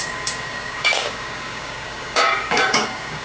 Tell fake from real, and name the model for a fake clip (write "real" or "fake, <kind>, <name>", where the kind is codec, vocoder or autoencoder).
fake, codec, DAC